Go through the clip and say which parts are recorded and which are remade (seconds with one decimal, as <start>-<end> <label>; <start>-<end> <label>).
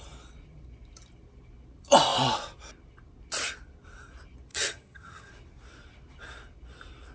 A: 0.0-4.5 recorded; 4.5-5.3 remade; 5.3-7.1 recorded